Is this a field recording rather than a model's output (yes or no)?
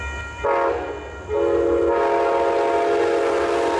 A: yes